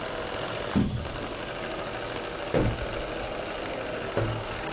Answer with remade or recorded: recorded